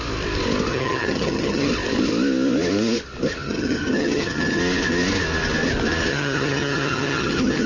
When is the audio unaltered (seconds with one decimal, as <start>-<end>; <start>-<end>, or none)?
0.0-0.7; 1.7-3.4; 4.6-6.1